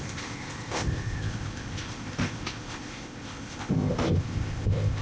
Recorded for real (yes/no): no